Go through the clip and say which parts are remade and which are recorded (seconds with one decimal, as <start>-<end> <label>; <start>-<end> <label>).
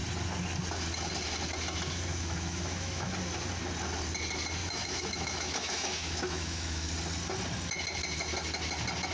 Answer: 0.0-2.1 recorded; 2.1-3.1 remade; 3.1-4.6 recorded; 4.6-6.9 remade; 6.9-9.1 recorded